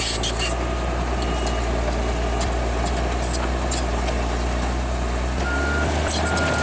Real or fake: real